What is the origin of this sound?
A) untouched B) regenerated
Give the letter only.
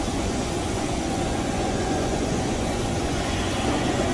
B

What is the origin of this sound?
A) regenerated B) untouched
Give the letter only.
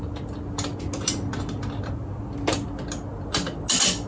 B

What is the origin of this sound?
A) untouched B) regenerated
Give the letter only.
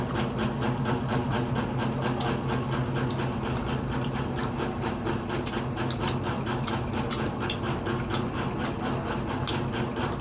A